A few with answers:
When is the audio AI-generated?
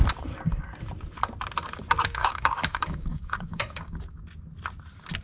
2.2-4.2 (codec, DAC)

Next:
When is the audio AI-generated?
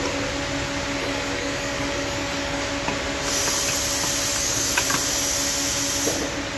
1.0-2.7 (codec, DAC); 4.3-4.8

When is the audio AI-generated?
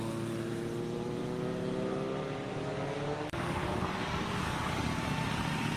2.5-4.9 (codec, DAC)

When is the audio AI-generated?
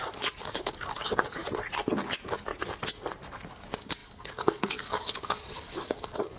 0.0-1.4 (codec, DAC); 2.1-2.5; 3.4-6.4